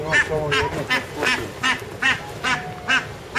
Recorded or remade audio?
recorded